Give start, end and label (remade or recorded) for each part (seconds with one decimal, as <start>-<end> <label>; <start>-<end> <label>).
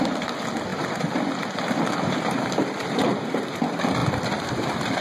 0.0-0.7 recorded; 0.7-3.6 remade; 3.6-4.0 recorded; 4.0-5.0 remade